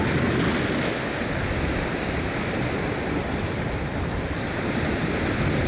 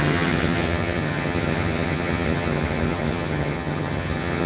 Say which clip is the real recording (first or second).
first